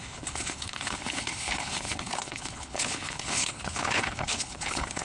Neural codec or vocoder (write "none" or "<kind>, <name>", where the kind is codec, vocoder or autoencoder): codec, HILCodec